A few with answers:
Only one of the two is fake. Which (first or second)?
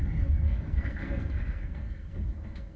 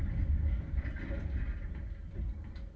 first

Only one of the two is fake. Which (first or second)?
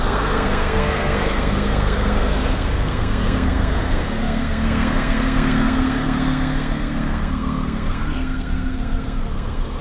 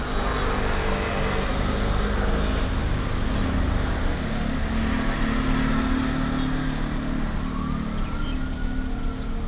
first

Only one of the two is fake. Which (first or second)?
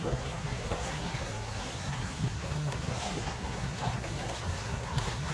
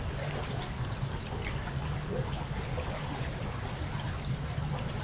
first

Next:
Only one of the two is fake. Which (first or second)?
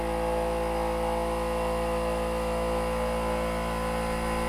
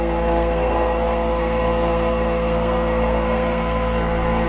second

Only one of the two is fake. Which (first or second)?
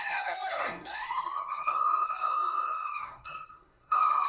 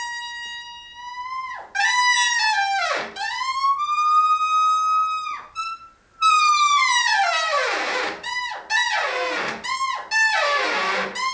first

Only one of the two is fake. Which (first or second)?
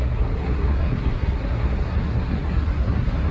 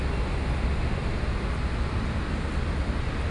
first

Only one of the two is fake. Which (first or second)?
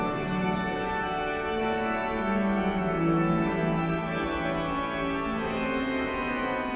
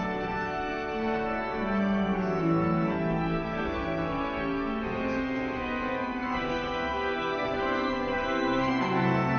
second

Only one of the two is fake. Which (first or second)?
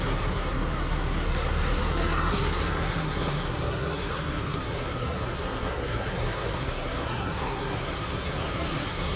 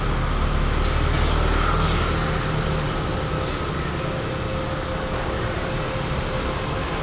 first